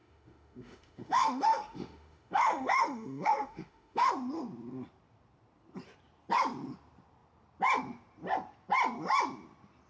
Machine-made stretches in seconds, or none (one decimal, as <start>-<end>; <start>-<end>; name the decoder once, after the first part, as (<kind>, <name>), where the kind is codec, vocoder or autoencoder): 0.0-4.1 (autoencoder, DAC-VAE)